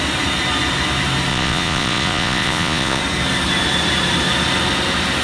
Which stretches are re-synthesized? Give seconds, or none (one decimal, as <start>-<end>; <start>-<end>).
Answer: 1.3-3.0